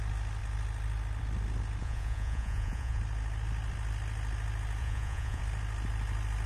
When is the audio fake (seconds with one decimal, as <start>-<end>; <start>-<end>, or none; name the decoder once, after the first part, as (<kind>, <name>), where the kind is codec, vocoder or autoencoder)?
1.8-3.0 (vocoder, Vocos); 4.8-5.4